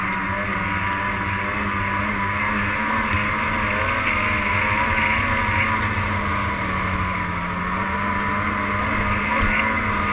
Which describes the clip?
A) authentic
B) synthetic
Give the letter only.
A